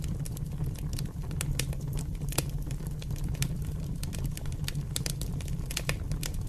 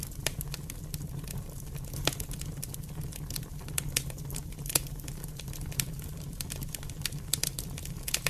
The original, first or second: second